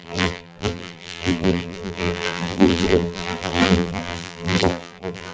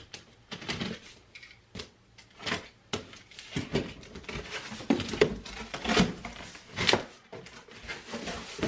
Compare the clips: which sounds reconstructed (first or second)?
first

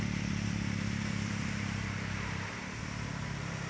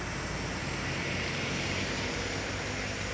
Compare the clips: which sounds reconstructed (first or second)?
first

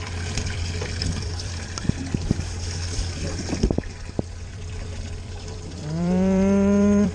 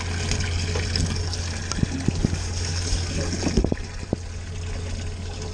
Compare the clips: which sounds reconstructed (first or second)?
first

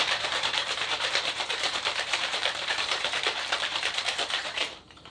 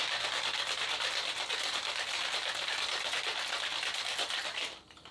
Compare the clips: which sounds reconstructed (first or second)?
first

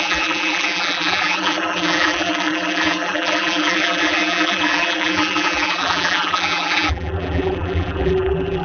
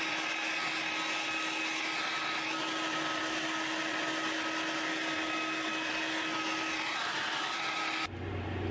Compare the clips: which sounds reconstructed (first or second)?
first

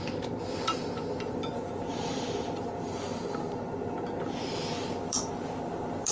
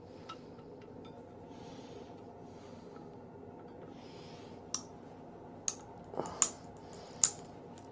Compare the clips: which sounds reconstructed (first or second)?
first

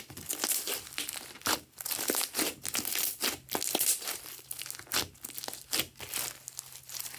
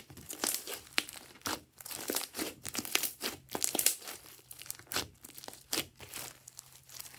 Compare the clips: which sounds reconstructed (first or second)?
second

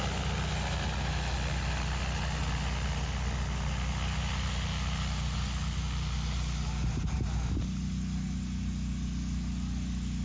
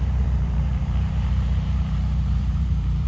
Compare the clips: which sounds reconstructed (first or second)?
second